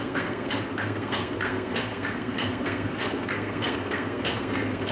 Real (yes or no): no